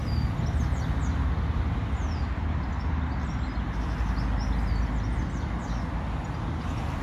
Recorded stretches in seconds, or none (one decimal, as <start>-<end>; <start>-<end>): 0.6-7.0